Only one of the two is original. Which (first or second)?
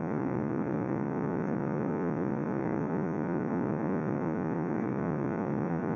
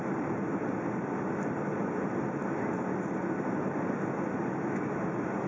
second